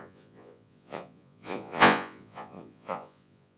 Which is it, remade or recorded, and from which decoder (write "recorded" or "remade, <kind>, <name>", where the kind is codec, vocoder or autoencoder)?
remade, vocoder, Vocos